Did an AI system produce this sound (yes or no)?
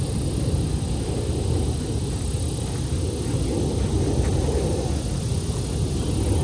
no